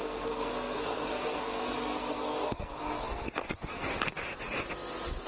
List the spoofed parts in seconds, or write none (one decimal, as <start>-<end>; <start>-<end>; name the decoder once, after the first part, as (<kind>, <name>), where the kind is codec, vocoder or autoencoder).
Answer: 0.0-3.9 (codec, SNAC)